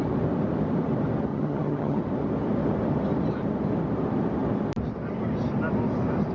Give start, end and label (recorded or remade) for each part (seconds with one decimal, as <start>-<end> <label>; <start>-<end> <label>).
0.0-1.3 recorded; 1.3-2.0 remade; 2.0-6.3 recorded